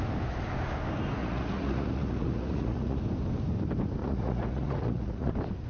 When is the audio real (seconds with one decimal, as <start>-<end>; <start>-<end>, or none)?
0.0-1.2; 3.0-4.0; 5.3-5.7